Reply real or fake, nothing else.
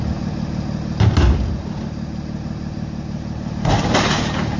real